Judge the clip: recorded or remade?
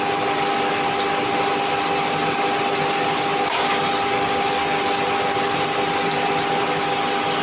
recorded